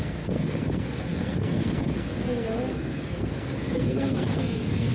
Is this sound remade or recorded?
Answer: remade